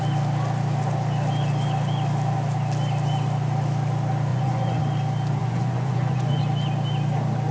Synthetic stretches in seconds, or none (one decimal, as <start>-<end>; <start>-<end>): 4.3-4.8; 5.4-6.4